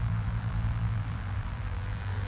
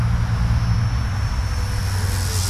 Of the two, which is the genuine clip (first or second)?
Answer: second